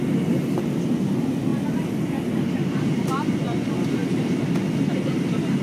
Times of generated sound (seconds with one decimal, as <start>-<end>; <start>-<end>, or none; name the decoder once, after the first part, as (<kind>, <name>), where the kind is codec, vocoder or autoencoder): 1.5-3.4 (vocoder, BigVGAN v2)